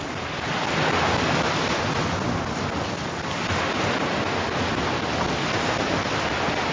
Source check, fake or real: real